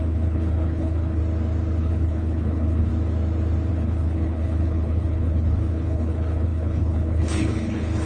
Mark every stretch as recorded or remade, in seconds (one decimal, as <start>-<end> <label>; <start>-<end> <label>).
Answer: 0.0-1.2 remade; 1.2-1.8 recorded; 1.8-2.9 remade; 2.9-3.7 recorded; 3.7-8.1 remade